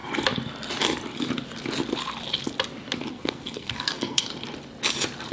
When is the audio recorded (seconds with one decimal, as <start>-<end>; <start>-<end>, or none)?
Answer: 0.0-3.1; 4.3-5.3